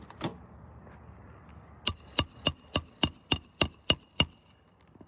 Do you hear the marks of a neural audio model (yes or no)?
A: no